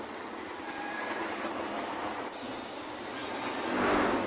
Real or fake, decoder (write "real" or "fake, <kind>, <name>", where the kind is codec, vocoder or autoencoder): real